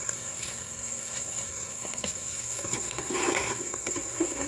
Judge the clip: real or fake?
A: fake